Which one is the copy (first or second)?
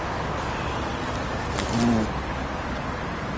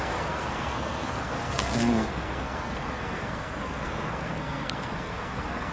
second